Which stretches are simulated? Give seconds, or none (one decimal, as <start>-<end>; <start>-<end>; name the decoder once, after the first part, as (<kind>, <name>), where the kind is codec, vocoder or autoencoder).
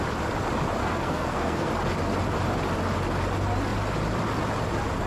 0.8-1.7 (codec, SNAC)